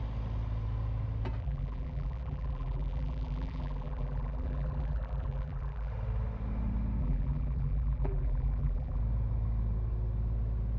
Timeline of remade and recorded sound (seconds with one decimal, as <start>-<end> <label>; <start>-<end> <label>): 0.0-1.4 recorded; 1.4-5.9 remade; 5.9-7.0 recorded; 7.0-9.0 remade; 9.0-10.8 recorded